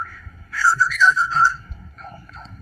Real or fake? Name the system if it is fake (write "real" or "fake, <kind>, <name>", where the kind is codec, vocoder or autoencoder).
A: fake, codec, SNAC